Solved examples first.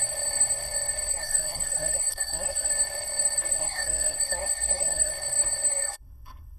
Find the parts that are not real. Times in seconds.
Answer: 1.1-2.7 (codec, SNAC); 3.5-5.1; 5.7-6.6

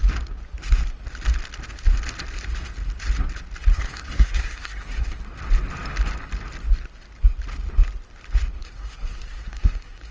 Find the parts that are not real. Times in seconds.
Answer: 3.7-5.2 (codec, SNAC); 8.6-10.1

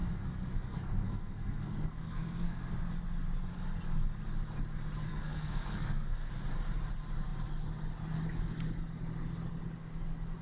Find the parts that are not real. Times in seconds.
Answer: 0.0-2.7 (codec, SNAC); 5.1-6.3

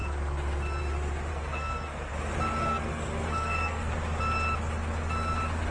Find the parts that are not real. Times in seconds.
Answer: 1.3-2.1 (codec, SNAC); 2.6-3.9

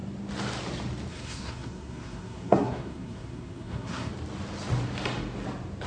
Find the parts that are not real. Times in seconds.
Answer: 1.1-4.1 (codec, SNAC)

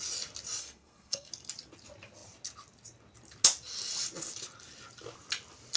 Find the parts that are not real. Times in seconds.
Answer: 0.6-1.3 (codec, SNAC)

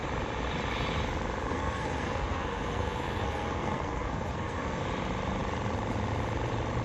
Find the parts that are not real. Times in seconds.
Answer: 1.5-4.8 (codec, SNAC)